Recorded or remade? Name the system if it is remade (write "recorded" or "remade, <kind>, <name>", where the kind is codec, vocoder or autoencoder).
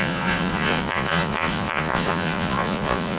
remade, vocoder, Vocos